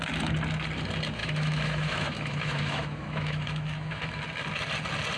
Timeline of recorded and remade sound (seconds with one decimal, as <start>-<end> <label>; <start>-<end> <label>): 0.0-1.2 recorded; 1.2-4.2 remade; 4.2-5.2 recorded